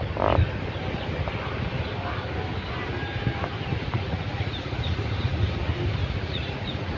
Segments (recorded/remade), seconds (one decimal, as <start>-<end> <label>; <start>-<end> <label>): 0.0-3.8 recorded; 3.8-5.4 remade; 5.4-6.0 recorded; 6.0-7.0 remade